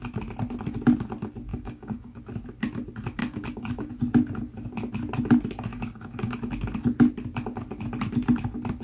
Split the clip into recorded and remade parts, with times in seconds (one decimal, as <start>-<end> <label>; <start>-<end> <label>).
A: 0.0-1.5 recorded; 1.5-2.2 remade; 2.2-3.2 recorded; 3.2-3.9 remade; 3.9-5.7 recorded; 5.7-6.4 remade; 6.4-8.8 recorded